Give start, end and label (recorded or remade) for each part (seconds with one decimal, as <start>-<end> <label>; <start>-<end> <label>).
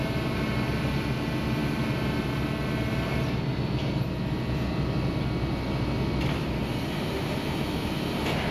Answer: 0.0-8.5 recorded